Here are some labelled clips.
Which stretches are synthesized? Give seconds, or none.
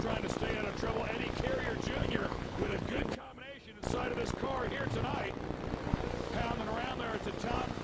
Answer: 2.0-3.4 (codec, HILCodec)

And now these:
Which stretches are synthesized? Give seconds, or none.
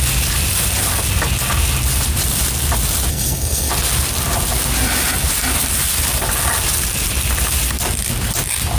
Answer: 3.1-3.7 (codec, SNAC)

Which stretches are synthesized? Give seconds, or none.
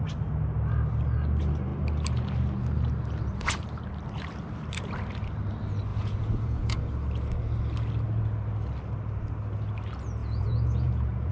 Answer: 5.9-6.8 (vocoder, Vocos); 10.2-11.3